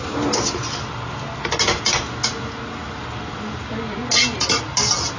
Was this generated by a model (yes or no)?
no